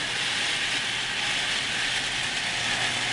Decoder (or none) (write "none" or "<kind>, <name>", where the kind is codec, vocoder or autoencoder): none